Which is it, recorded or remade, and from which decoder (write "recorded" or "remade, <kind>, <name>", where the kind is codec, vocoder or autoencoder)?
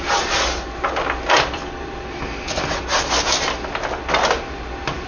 recorded